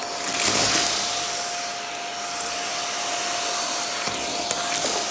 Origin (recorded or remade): recorded